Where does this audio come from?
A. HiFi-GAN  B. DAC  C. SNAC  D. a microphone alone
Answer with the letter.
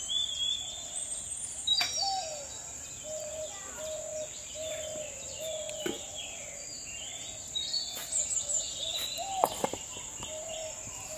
D